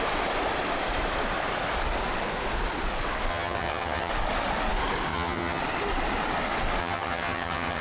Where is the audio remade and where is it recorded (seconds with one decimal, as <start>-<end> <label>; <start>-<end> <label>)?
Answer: 0.0-3.3 recorded; 3.3-4.1 remade; 4.1-5.1 recorded; 5.1-5.6 remade; 5.6-6.8 recorded; 6.8-7.8 remade

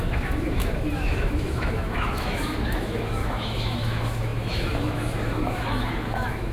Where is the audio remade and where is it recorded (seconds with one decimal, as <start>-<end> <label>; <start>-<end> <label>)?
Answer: 0.0-6.5 remade

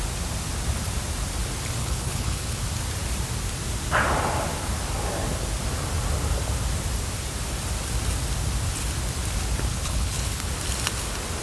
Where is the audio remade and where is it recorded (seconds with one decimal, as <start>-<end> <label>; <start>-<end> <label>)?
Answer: 0.0-1.8 recorded; 1.8-2.6 remade; 2.6-9.7 recorded; 9.7-10.5 remade; 10.5-11.4 recorded